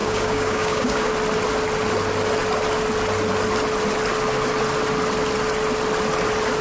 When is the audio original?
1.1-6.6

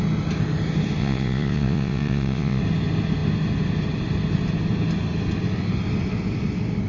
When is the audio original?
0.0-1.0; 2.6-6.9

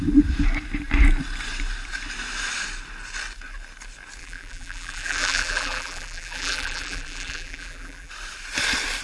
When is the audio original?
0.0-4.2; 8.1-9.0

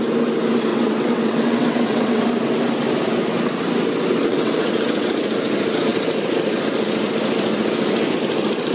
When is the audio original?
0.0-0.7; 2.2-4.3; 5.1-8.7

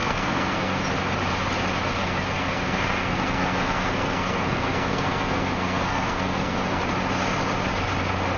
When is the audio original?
0.8-2.0; 6.8-8.4

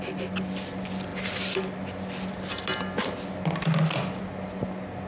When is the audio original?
0.0-5.1

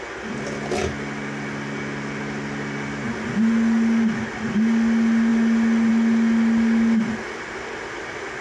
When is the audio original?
0.0-8.4